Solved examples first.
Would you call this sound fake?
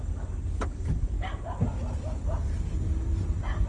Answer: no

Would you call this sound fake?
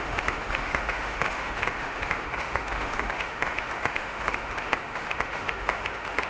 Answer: yes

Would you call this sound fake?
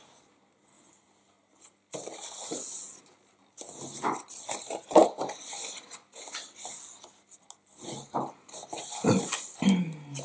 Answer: no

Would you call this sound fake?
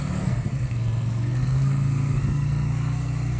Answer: yes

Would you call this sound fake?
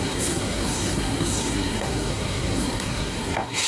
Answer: yes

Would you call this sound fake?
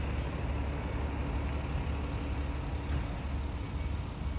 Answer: no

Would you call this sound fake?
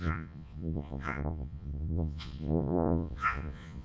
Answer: yes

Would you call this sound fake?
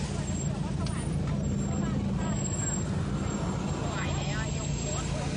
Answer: no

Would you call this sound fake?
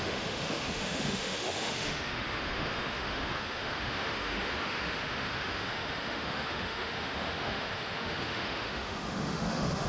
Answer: yes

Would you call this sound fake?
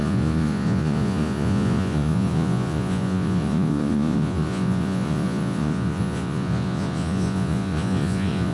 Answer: yes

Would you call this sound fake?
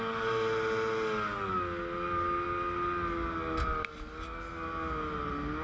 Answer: no